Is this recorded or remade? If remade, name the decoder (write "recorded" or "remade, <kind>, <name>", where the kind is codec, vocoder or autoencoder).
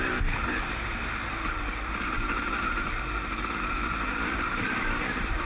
remade, vocoder, BigVGAN v2